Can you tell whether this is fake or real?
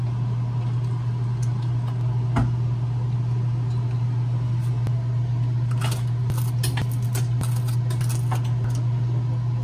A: real